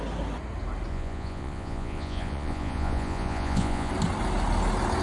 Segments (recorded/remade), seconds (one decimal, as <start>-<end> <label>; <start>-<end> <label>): 0.0-0.9 recorded; 0.9-3.9 remade; 3.9-5.0 recorded